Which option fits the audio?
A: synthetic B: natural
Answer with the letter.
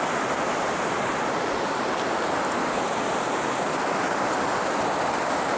B